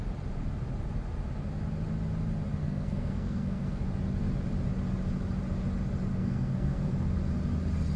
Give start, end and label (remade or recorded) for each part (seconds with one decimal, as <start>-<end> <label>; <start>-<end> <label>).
0.0-2.6 recorded; 2.6-3.8 remade; 3.8-6.1 recorded; 6.1-6.9 remade; 6.9-8.0 recorded